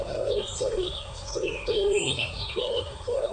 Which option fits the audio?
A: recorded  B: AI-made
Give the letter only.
B